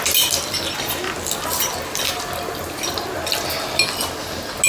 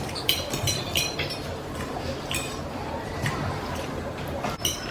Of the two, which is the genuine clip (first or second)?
first